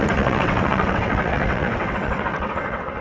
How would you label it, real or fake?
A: fake